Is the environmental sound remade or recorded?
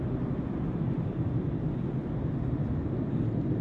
recorded